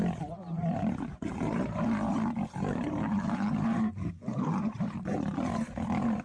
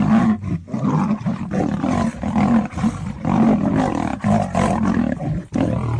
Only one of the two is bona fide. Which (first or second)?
second